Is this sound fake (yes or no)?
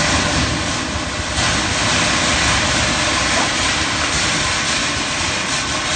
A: no